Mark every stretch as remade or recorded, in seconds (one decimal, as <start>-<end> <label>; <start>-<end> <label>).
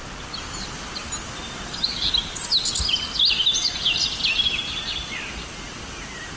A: 0.0-6.4 recorded